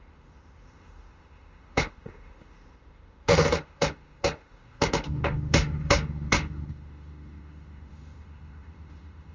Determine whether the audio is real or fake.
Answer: fake